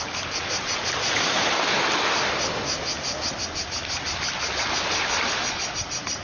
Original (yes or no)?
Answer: yes